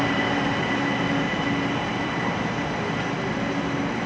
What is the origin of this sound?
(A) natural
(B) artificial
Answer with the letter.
A